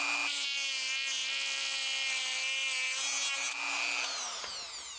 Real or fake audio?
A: real